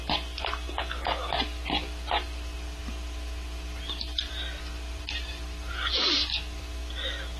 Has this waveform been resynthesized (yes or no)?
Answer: no